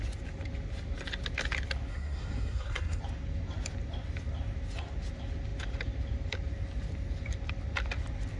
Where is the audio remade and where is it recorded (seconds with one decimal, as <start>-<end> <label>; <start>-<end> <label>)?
0.0-1.9 recorded; 1.9-3.0 remade; 3.0-8.4 recorded